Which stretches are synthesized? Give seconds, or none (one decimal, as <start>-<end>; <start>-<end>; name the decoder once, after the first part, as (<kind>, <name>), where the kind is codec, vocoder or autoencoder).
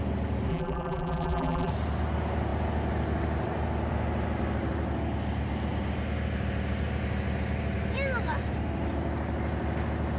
0.5-1.7 (vocoder, BigVGAN v2)